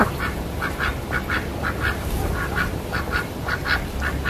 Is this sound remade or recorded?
recorded